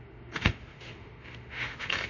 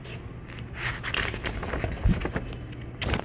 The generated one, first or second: first